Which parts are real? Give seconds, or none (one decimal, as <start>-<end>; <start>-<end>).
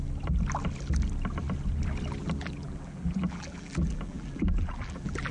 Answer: 0.0-2.2